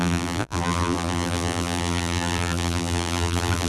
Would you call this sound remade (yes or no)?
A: yes